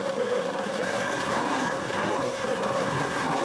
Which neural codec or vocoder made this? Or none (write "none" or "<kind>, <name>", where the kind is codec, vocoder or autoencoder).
codec, SNAC